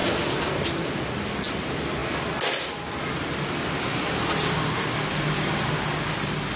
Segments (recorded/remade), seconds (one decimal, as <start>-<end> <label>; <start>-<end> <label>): 0.0-6.6 recorded